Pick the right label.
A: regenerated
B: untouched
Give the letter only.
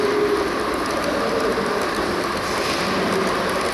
B